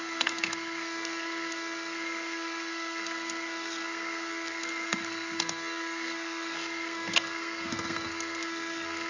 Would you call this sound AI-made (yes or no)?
yes